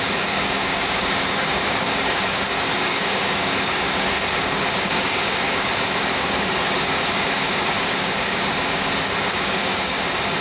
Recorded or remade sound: remade